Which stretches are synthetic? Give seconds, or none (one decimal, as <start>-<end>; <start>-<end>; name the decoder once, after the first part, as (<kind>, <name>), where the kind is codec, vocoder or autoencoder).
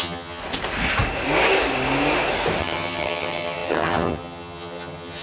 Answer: 0.0-0.4 (vocoder, HiFi-GAN); 2.6-5.2